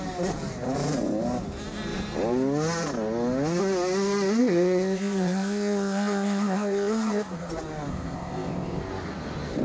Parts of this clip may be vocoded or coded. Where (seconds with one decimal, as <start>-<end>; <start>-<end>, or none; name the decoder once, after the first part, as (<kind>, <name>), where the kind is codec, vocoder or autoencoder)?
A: 4.4-7.5 (codec, ZipCodec); 7.9-8.8